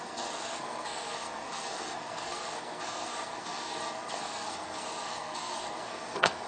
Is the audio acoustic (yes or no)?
no